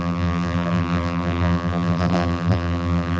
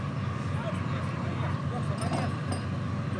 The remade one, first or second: first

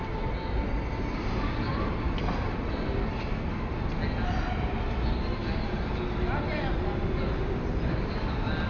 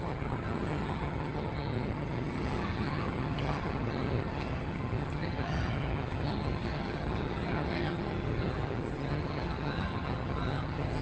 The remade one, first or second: second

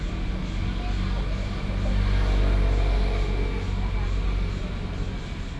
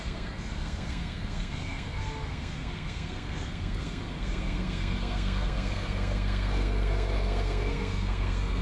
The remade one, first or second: second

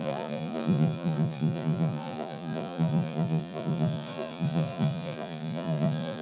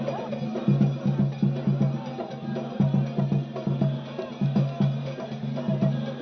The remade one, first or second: first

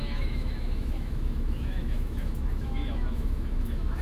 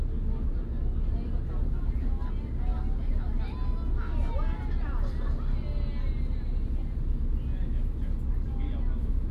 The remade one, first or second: first